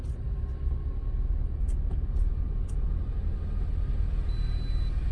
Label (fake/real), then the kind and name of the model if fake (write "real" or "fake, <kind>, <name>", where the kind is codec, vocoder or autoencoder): real